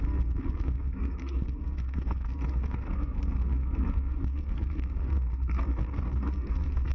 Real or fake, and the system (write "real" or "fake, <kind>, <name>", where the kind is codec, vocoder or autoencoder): fake, codec, SNAC